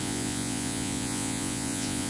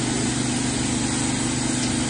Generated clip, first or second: first